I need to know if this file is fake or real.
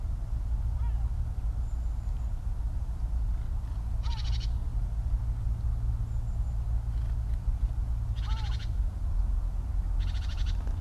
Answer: real